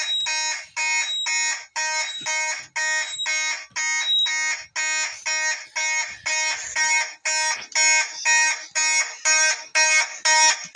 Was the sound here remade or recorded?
recorded